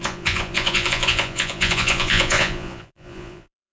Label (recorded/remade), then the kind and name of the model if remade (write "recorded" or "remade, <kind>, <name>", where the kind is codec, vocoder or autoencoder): remade, vocoder, Vocos